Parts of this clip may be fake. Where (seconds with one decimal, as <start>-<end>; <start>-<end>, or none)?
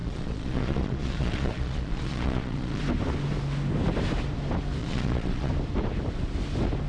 0.0-2.8; 4.8-5.5